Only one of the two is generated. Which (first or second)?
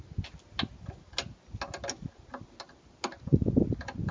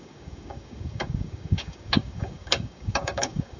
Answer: second